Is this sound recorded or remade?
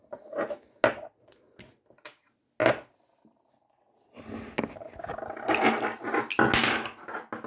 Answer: recorded